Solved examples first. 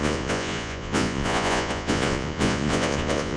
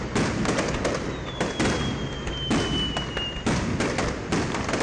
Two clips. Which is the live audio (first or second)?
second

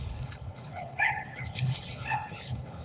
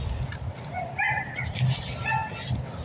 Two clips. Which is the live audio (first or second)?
second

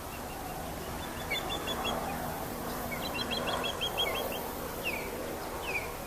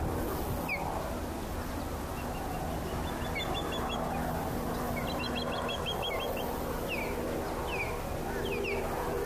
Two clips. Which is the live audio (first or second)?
second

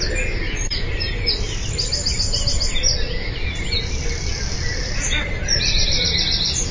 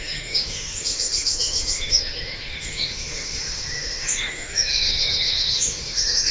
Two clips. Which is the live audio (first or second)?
first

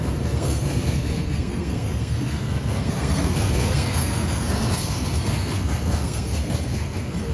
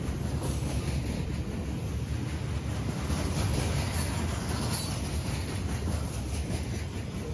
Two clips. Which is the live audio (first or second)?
second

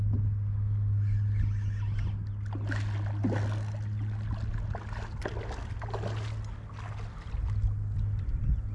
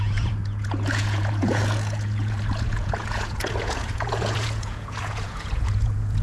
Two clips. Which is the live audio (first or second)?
first